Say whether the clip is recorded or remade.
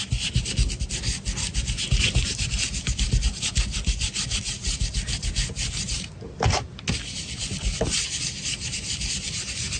recorded